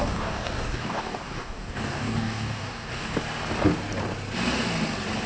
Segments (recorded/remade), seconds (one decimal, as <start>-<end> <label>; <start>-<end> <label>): 0.0-3.2 remade; 3.2-5.3 recorded